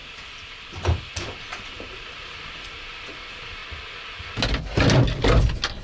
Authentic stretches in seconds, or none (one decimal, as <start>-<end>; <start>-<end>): 0.0-1.7; 3.6-5.8